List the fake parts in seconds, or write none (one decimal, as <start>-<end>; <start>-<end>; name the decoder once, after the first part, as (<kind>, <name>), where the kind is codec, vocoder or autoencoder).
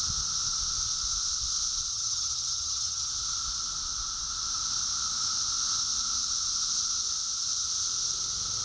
1.9-3.1 (vocoder, HiFi-GAN)